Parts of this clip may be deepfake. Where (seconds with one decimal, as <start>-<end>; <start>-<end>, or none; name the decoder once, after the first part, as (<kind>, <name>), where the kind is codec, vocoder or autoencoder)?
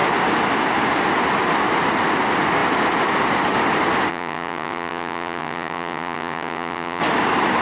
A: 4.1-7.0 (vocoder, HiFi-GAN)